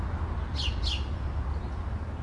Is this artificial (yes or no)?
no